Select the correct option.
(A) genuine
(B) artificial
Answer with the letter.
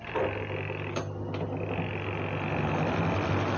A